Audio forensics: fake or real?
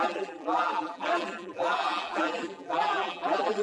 fake